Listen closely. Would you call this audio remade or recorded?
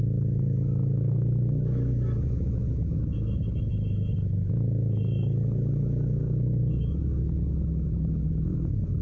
remade